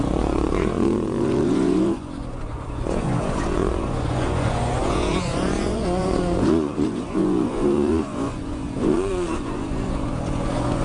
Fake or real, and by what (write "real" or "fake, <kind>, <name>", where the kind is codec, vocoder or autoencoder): fake, vocoder, Vocos